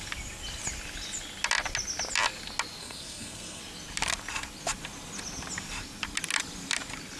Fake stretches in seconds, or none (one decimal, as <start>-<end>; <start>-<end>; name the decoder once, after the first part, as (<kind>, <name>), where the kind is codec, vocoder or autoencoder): 2.8-3.6 (codec, SNAC)